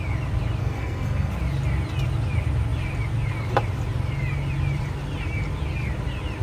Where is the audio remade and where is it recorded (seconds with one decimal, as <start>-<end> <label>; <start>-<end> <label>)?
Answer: 0.0-0.6 recorded; 0.6-1.3 remade; 1.3-6.4 recorded